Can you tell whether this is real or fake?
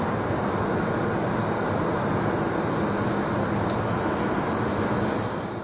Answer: real